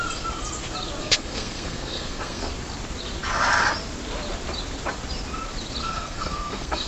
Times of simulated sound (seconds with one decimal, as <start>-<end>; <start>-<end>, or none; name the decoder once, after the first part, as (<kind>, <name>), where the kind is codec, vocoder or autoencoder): 1.0-2.5 (codec, SNAC); 5.8-6.9